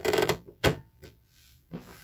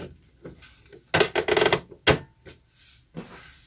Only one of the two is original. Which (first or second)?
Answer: second